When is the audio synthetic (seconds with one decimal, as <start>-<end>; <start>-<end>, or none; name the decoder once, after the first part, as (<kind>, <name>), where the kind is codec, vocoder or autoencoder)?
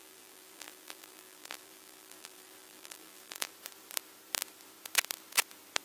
0.0-3.5 (vocoder, BigVGAN v2)